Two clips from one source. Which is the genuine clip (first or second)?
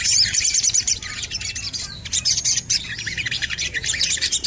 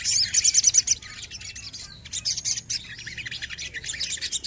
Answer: second